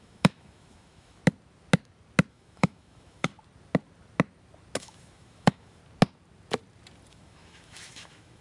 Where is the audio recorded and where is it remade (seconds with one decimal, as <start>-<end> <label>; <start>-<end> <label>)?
0.0-1.2 remade; 1.2-2.3 recorded; 2.3-3.3 remade; 3.3-4.8 recorded; 4.8-5.8 remade; 5.8-7.1 recorded; 7.1-8.4 remade

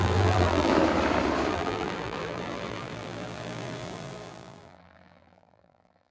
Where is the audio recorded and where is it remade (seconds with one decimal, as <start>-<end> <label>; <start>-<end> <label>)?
0.0-0.7 remade; 0.7-1.5 recorded; 1.5-6.1 remade

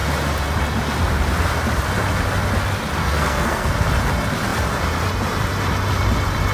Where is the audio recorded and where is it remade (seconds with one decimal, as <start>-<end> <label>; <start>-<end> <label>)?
0.0-3.0 recorded; 3.0-3.7 remade; 3.7-6.5 recorded

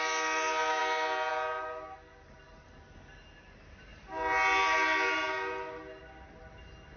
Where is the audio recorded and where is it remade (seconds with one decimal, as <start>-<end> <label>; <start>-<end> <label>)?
0.0-7.0 recorded

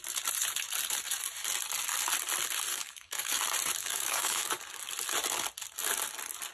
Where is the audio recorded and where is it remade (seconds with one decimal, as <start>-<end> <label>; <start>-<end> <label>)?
0.0-2.7 recorded; 2.7-3.4 remade; 3.4-3.8 recorded; 3.8-4.6 remade; 4.6-6.5 recorded